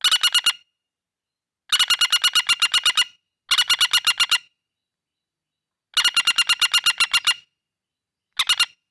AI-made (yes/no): no